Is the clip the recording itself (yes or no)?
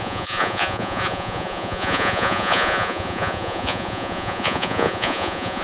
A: no